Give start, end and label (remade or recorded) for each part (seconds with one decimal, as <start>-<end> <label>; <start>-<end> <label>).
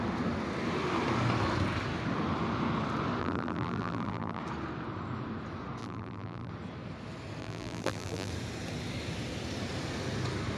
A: 0.0-3.2 recorded; 3.2-4.4 remade; 4.4-5.8 recorded; 5.8-6.5 remade; 6.5-7.4 recorded; 7.4-8.3 remade; 8.3-10.6 recorded